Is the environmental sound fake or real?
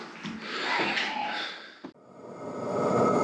real